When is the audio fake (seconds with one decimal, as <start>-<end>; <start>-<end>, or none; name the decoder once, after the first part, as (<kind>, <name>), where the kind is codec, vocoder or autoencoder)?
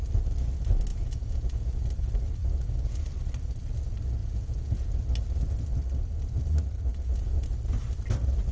0.9-1.8 (vocoder, Vocos); 2.4-3.0; 4.2-4.9; 6.9-7.5